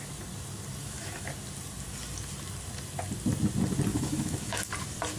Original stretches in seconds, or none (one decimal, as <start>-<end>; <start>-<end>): 0.0-0.8; 1.3-3.9; 4.7-5.2